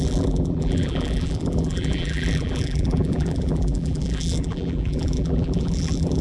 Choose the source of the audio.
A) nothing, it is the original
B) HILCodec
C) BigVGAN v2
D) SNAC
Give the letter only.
C